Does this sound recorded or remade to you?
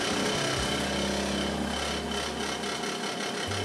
recorded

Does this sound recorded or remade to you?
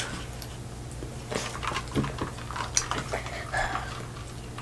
recorded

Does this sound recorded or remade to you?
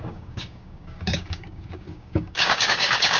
remade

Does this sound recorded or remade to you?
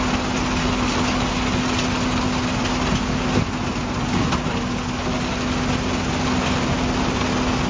recorded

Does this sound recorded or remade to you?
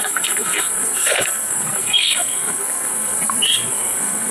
remade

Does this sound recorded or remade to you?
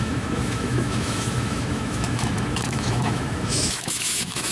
remade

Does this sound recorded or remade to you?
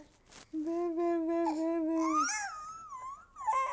recorded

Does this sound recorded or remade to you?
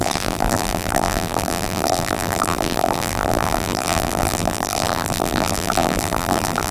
remade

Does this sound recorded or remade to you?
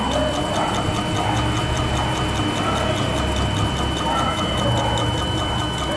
recorded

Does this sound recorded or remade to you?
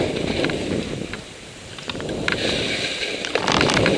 remade